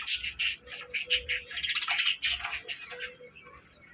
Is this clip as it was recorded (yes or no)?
yes